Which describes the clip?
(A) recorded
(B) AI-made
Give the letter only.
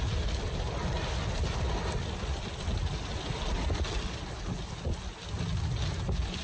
A